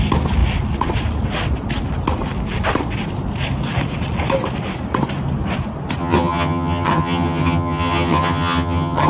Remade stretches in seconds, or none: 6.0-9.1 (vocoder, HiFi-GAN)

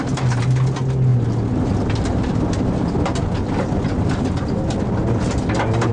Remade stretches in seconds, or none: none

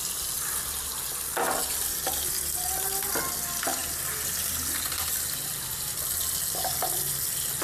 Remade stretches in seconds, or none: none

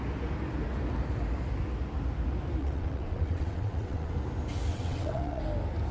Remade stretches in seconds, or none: 2.6-4.1 (vocoder, WaveNeXt); 4.7-5.4